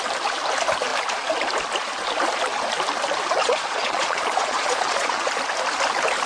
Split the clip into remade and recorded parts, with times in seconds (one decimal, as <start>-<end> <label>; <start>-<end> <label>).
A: 0.0-3.4 recorded; 3.4-5.3 remade; 5.3-6.3 recorded